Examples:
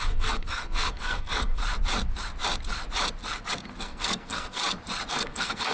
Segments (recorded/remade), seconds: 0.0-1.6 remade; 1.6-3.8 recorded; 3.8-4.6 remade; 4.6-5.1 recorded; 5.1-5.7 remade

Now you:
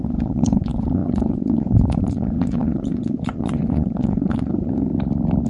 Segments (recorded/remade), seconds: 0.0-4.9 remade; 4.9-5.5 recorded